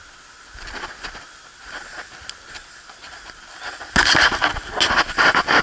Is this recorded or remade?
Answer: recorded